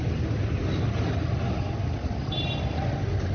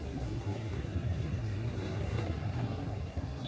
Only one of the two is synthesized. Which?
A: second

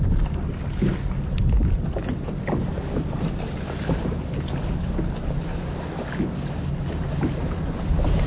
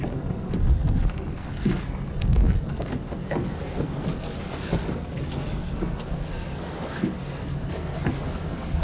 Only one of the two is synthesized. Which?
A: second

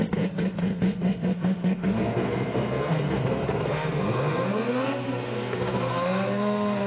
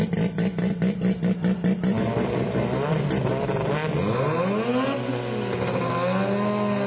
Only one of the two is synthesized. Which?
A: first